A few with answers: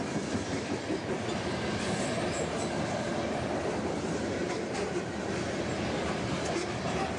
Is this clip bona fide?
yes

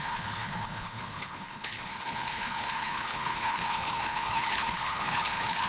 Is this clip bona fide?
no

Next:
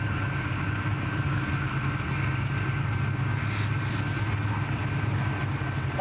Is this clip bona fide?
yes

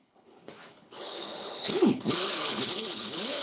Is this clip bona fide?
no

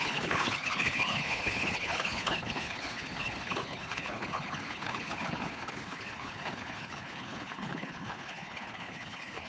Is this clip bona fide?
no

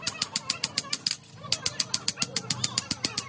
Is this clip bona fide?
yes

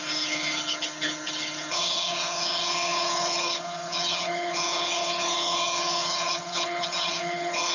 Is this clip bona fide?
no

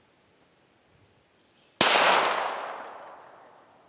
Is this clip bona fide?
yes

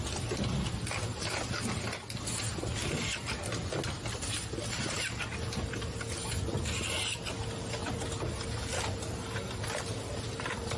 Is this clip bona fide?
yes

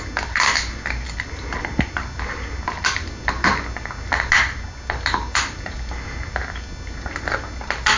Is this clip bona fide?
yes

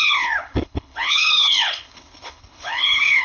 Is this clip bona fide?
no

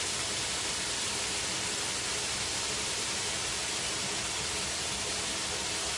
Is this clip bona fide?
yes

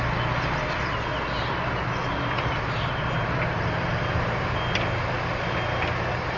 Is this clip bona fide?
yes